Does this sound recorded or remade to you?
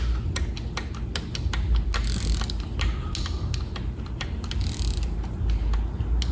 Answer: recorded